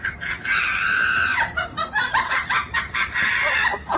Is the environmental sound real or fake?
fake